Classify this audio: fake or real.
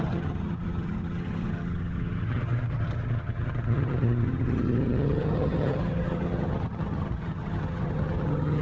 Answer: fake